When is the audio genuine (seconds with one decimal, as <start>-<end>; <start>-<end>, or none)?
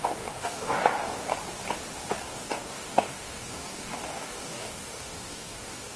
1.3-2.1